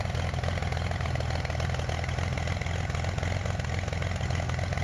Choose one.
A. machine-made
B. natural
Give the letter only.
B